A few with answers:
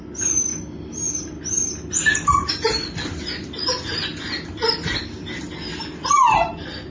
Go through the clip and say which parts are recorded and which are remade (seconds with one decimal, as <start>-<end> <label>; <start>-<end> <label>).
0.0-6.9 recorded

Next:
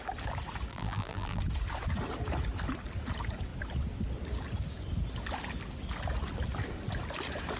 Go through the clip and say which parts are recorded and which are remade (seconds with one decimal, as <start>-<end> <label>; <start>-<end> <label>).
0.0-0.7 recorded; 0.7-1.4 remade; 1.4-7.6 recorded

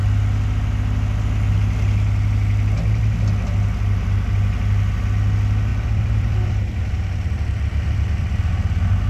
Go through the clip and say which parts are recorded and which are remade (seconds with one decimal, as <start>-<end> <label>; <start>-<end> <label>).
0.0-5.7 recorded; 5.7-8.4 remade; 8.4-9.1 recorded